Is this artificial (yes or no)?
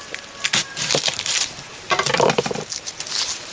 no